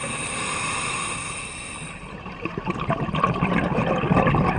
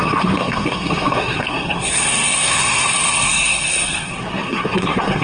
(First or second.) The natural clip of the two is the first